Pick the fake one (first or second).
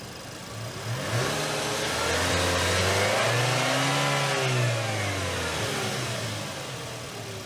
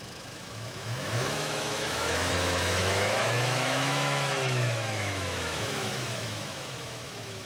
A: second